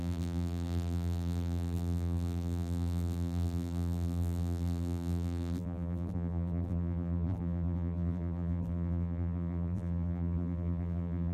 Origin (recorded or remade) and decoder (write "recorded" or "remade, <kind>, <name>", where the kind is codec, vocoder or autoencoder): remade, vocoder, BigVGAN v2